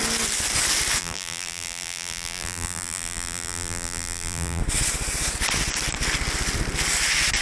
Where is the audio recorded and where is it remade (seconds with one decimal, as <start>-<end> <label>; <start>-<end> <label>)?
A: 0.0-1.0 recorded; 1.0-4.6 remade; 4.6-7.4 recorded